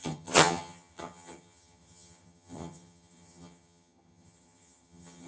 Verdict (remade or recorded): remade